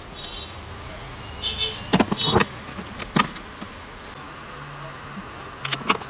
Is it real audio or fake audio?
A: real